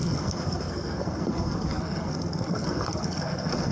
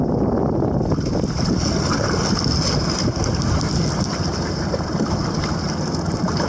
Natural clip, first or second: second